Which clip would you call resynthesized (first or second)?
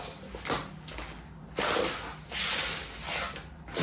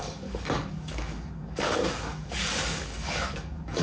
second